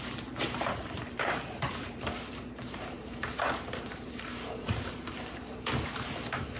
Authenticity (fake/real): fake